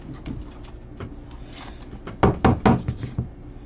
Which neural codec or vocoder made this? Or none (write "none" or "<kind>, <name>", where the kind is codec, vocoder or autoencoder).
none